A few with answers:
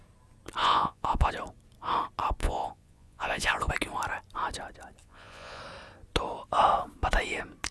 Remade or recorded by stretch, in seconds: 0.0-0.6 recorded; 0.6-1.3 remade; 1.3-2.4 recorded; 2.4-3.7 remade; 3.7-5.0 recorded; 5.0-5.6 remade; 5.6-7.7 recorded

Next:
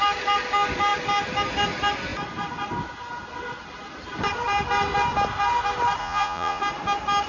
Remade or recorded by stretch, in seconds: 0.0-6.0 recorded; 6.0-6.6 remade; 6.6-7.3 recorded

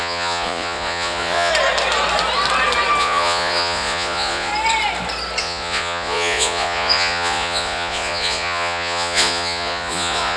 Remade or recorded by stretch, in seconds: 0.0-1.5 remade; 1.5-3.0 recorded; 3.0-4.5 remade; 4.5-5.4 recorded; 5.4-10.4 remade

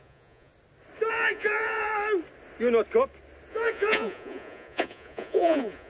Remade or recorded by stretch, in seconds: 0.0-0.5 remade; 0.5-1.1 recorded; 1.1-1.9 remade; 1.9-3.5 recorded; 3.5-5.9 remade

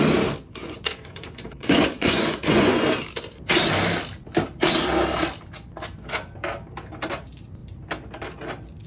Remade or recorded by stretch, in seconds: 0.0-0.6 recorded; 0.6-2.8 remade; 2.8-8.9 recorded

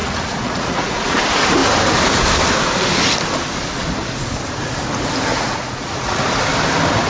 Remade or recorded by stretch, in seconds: 0.0-1.2 remade; 1.2-5.3 recorded; 5.3-6.2 remade; 6.2-7.1 recorded